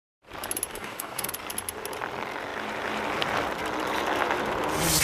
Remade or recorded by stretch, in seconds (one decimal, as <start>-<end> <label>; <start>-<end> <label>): 0.0-0.7 recorded; 0.7-1.3 remade; 1.3-5.0 recorded